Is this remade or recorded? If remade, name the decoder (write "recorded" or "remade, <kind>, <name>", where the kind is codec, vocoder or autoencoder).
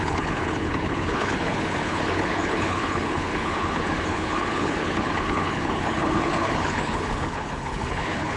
remade, codec, HILCodec